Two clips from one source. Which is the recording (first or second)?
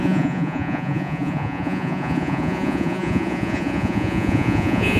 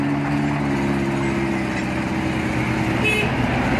second